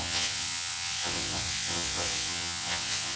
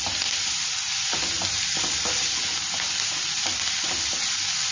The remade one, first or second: first